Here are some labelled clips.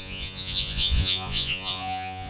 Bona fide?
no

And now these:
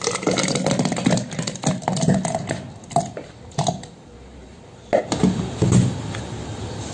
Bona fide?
yes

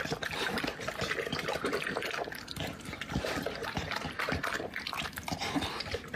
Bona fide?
yes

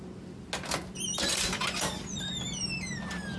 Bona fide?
yes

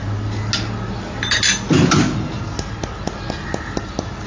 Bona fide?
yes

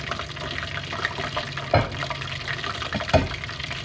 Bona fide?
yes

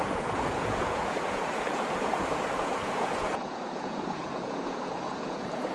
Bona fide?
no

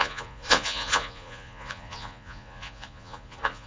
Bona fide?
no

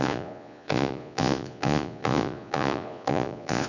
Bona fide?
no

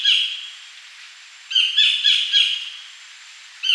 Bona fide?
yes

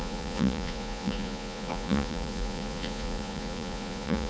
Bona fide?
no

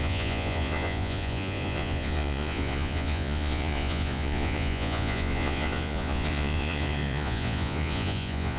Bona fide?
no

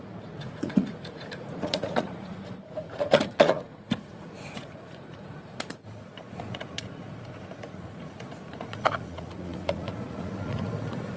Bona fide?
no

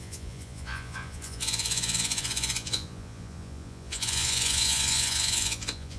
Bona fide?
no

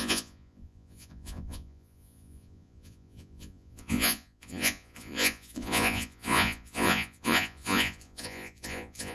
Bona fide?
no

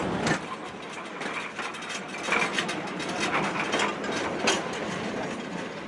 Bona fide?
yes